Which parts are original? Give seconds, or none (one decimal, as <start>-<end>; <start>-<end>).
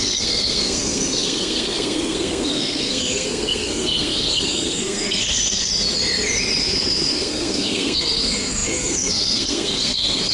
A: 5.7-6.6